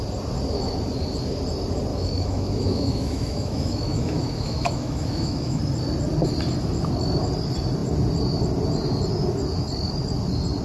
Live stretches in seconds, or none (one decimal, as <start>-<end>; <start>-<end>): 0.0-1.9; 5.6-10.6